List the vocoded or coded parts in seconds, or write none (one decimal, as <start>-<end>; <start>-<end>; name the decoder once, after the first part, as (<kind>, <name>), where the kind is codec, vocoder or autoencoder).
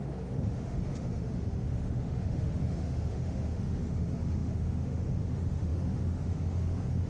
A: 0.0-7.1 (autoencoder, DAC-VAE)